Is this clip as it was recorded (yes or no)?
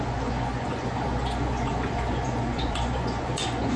no